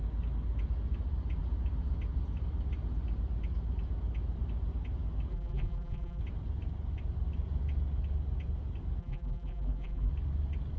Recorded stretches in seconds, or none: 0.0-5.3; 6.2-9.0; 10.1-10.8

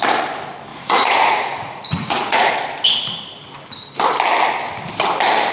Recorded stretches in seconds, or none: 0.0-0.7; 2.5-5.5

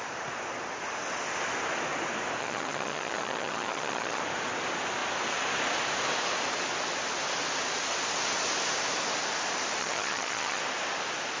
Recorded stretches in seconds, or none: 0.0-2.4; 4.2-9.8; 10.6-11.4

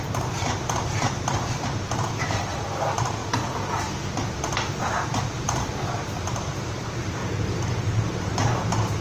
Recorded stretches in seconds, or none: 3.2-5.0; 7.2-7.7

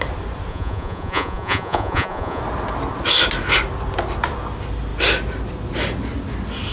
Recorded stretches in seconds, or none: 0.0-0.5; 2.4-6.7

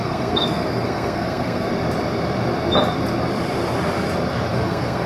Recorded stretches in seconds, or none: 1.7-4.5

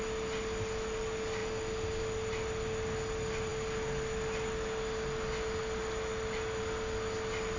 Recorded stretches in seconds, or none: 0.0-7.6

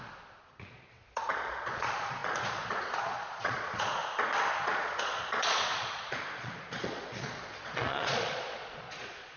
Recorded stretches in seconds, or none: 4.0-4.6